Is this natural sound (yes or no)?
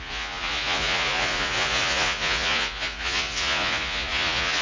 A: no